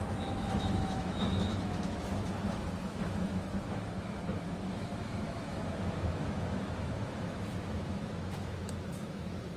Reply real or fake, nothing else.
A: fake